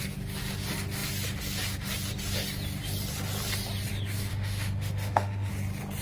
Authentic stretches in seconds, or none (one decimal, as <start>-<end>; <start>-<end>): 0.0-4.3; 5.5-6.0